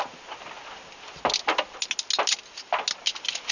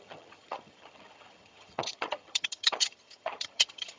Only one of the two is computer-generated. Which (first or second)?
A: second